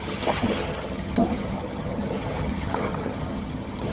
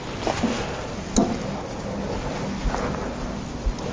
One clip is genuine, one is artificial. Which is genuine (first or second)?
second